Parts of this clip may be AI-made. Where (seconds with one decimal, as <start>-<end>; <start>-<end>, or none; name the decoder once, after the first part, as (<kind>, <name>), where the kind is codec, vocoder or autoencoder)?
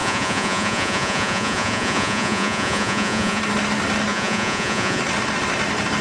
0.0-3.4 (vocoder, Vocos); 4.1-5.0